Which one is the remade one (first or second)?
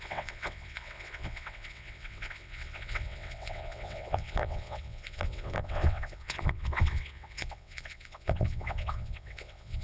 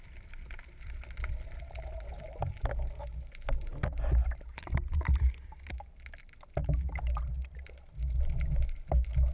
first